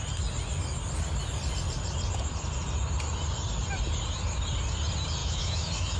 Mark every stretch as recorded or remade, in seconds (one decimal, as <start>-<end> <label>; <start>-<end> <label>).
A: 0.0-5.2 recorded; 5.2-6.0 remade